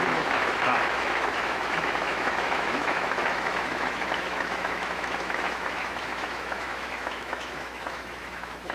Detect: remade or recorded remade